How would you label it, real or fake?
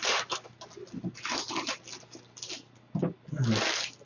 real